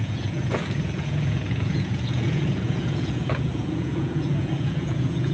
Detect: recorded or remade remade